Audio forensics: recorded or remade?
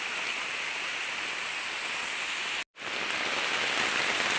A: recorded